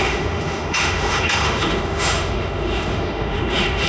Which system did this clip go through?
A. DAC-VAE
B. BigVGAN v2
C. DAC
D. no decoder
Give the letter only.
A